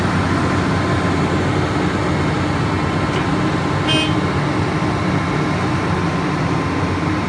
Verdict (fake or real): real